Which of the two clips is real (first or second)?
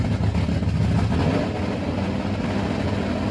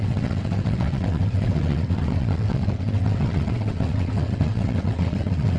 first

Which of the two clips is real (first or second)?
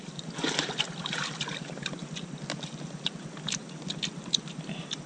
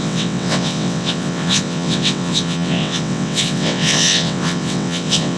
first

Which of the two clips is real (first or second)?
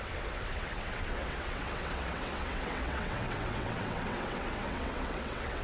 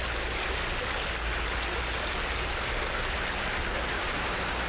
second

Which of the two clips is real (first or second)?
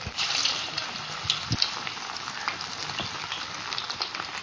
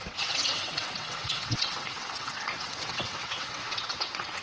first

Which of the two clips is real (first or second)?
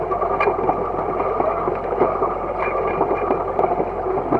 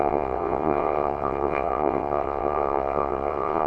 first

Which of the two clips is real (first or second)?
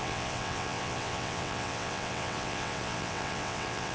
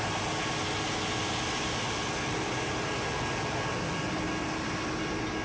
second